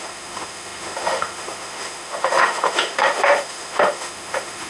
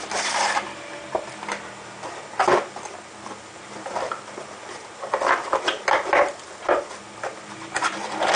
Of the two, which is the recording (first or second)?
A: second